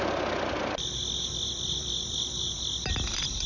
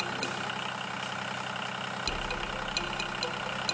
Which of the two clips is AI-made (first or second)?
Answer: first